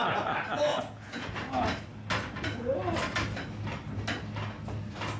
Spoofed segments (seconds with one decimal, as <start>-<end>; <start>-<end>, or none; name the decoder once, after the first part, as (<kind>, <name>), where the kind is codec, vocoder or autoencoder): 0.7-1.3 (vocoder, Vocos)